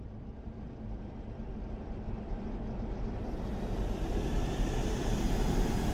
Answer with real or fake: fake